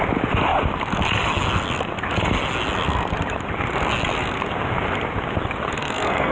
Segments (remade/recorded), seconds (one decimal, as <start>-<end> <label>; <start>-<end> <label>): 0.0-5.8 recorded; 5.8-6.3 remade